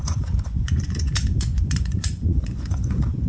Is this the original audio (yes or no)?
no